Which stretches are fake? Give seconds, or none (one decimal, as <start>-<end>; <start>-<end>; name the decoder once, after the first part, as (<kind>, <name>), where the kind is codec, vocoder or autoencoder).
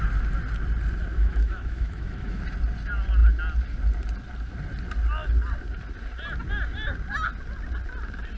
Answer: 1.1-2.4 (autoencoder, DAC-VAE)